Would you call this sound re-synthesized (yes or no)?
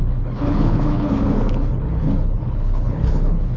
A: yes